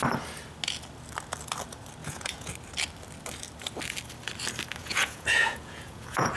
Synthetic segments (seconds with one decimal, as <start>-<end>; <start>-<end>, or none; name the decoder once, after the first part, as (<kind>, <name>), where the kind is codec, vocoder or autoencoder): 2.0-2.5 (vocoder, Vocos); 4.8-6.4